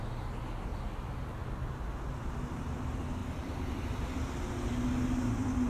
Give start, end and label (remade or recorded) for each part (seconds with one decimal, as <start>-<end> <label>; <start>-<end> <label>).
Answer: 0.0-3.2 recorded; 3.2-4.2 remade; 4.2-5.7 recorded